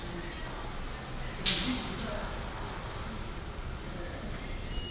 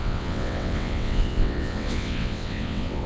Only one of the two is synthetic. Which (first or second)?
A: second